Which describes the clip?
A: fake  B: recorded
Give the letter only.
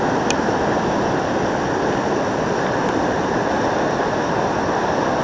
B